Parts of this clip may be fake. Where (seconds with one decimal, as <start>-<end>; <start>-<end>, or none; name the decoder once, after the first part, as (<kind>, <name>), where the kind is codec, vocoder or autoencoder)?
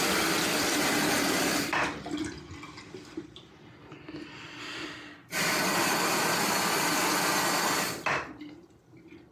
5.2-6.2 (vocoder, BigVGAN v2)